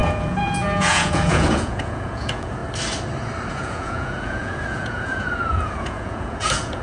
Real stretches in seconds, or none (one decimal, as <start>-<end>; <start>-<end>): 2.6-3.5